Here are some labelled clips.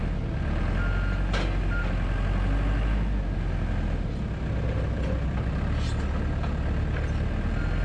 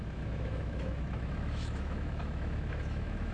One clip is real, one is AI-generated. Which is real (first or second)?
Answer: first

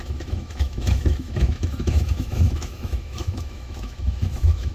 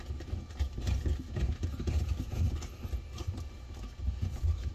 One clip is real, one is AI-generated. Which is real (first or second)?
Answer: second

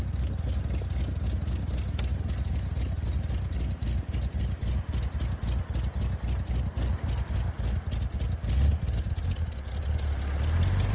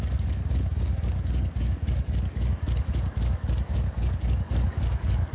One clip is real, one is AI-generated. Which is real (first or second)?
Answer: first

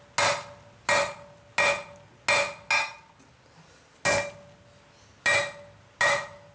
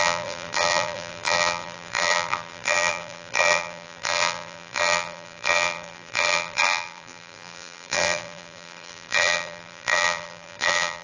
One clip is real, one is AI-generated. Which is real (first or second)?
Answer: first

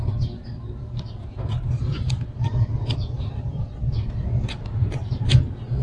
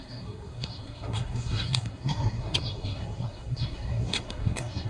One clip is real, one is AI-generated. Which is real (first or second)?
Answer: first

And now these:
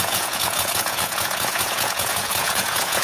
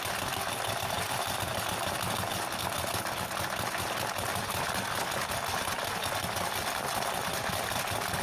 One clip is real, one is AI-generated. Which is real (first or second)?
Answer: second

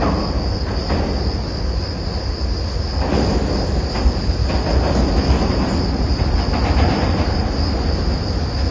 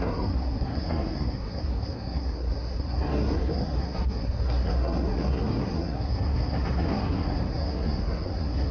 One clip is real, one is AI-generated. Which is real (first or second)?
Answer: first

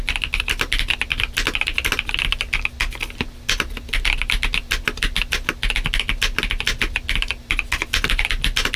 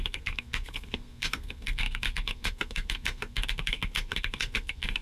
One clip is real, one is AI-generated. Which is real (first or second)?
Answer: first